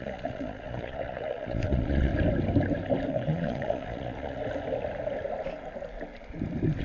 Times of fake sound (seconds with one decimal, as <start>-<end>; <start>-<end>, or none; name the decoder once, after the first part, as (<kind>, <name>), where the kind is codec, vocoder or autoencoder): 0.0-2.1 (vocoder, Vocos); 3.1-4.4